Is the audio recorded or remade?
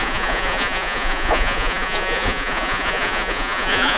remade